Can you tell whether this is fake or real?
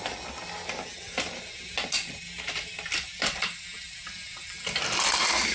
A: real